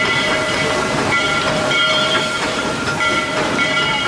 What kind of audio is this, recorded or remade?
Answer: remade